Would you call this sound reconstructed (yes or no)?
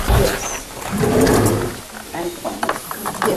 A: no